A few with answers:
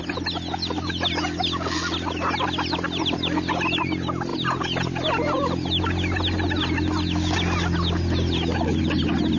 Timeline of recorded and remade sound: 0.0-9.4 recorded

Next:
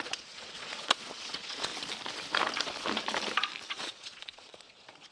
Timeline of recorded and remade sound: 0.0-1.7 remade; 1.7-3.7 recorded; 3.7-5.1 remade

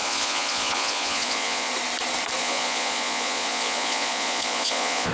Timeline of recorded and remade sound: 0.0-1.7 remade; 1.7-2.4 recorded; 2.4-5.1 remade

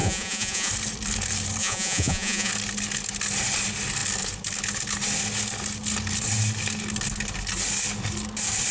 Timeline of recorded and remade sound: 0.0-0.7 remade; 0.7-1.6 recorded; 1.6-2.5 remade; 2.5-8.7 recorded

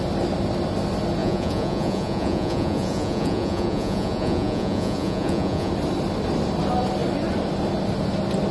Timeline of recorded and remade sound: 0.0-1.2 recorded; 1.2-5.7 remade; 5.7-8.5 recorded